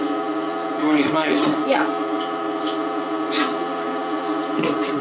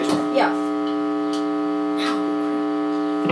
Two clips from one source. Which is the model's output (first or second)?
first